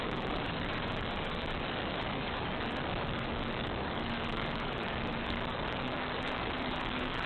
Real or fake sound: fake